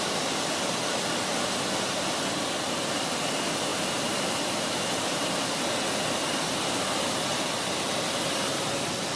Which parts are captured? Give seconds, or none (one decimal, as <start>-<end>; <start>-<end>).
0.0-3.7; 5.4-9.2